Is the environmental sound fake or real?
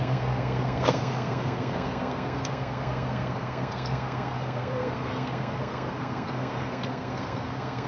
fake